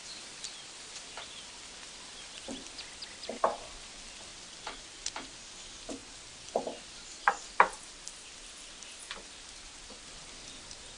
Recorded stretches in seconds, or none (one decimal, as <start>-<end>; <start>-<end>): 0.0-11.0